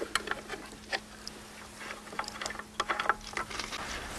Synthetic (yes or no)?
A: no